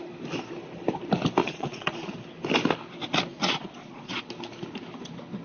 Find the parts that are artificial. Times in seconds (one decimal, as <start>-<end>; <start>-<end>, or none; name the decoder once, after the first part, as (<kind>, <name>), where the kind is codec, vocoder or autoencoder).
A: 1.4-2.1 (vocoder, Vocos); 3.3-4.2